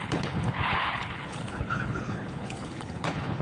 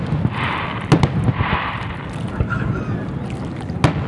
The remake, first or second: first